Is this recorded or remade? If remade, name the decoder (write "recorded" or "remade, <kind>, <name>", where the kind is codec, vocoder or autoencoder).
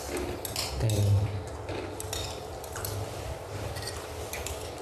recorded